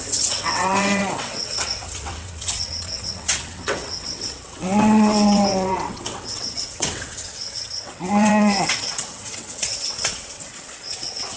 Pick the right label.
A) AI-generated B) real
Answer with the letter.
A